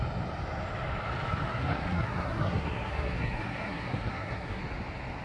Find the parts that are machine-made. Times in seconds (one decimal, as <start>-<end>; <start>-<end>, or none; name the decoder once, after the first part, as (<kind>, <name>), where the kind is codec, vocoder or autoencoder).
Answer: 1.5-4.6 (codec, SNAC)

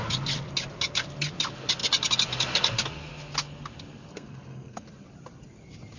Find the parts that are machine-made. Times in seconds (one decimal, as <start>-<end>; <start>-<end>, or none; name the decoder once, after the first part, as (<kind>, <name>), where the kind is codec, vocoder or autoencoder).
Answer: 4.1-4.9 (codec, SNAC)

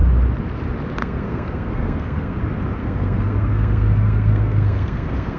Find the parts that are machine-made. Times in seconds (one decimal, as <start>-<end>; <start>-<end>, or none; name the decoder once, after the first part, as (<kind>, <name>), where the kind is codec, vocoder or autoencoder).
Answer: 1.0-2.4 (codec, SNAC); 2.8-5.4

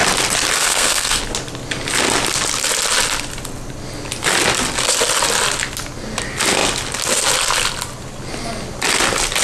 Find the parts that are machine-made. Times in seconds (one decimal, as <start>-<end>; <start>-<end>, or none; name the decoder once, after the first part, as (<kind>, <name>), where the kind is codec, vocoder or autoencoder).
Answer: 0.6-1.2 (codec, SNAC)

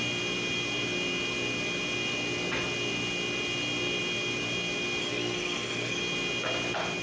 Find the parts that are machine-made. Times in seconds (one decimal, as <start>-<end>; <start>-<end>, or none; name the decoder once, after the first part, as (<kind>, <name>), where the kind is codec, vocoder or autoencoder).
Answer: 5.0-6.0 (codec, SNAC)